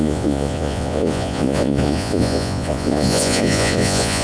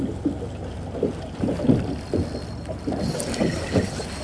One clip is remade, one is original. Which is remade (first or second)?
first